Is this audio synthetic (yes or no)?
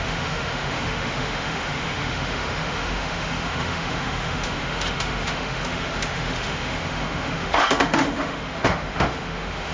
yes